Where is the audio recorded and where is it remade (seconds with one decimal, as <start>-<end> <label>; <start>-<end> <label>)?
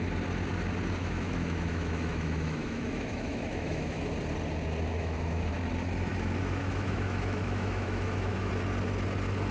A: 0.0-1.0 recorded; 1.0-4.0 remade; 4.0-4.9 recorded; 4.9-5.5 remade; 5.5-6.1 recorded; 6.1-8.5 remade; 8.5-9.5 recorded